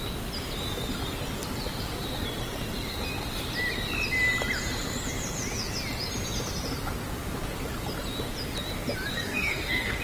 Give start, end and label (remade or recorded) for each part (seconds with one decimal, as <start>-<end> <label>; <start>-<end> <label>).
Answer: 0.0-9.1 recorded; 9.1-10.0 remade